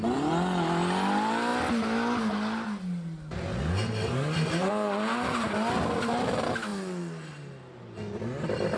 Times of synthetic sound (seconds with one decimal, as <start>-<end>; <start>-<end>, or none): none